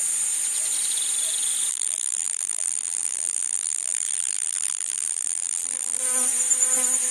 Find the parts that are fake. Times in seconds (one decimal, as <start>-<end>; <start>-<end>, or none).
1.7-6.0